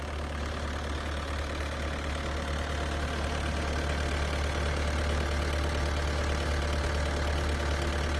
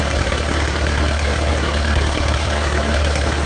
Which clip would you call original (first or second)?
first